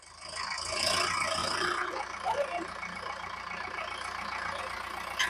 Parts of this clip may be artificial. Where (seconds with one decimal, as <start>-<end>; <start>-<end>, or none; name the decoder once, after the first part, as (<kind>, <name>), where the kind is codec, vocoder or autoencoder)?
1.4-4.6 (vocoder, BigVGAN v2)